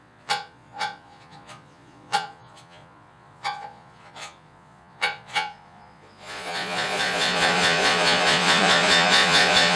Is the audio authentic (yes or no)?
no